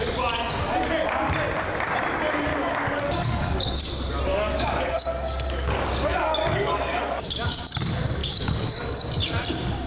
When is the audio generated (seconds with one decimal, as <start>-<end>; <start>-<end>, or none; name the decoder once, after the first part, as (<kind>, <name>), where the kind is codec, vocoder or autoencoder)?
2.5-3.8 (codec, DAC); 4.3-7.3; 8.2-9.1